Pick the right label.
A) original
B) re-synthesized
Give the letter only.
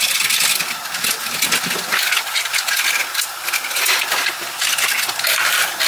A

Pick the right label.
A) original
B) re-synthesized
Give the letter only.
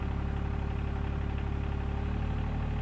A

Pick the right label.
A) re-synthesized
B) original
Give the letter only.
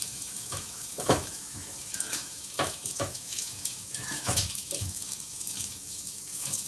A